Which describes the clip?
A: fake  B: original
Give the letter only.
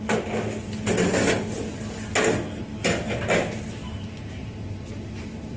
B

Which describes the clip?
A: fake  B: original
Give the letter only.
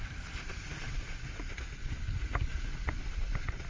B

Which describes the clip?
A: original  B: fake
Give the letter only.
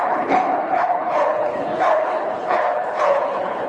B